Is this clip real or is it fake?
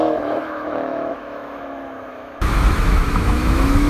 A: fake